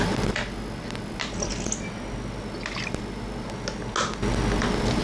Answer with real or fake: real